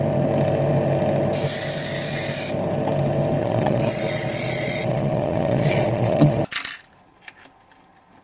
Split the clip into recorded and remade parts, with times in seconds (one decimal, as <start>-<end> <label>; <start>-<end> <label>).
0.0-3.4 recorded; 3.4-6.4 remade; 6.4-8.2 recorded